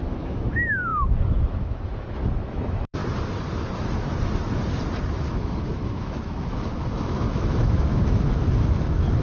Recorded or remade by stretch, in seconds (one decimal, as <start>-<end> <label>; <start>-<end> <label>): 0.0-3.0 remade; 3.0-5.3 recorded; 5.3-9.2 remade